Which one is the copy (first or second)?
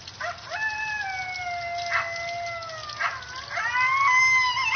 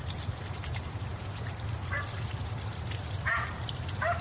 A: second